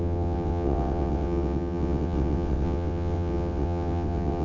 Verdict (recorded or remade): remade